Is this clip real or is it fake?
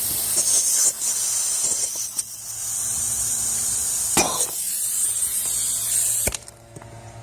real